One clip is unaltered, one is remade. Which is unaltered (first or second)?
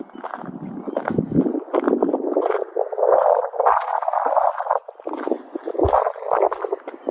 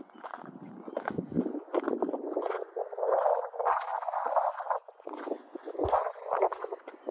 first